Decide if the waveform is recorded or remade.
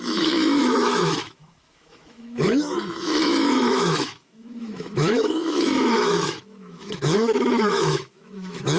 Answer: remade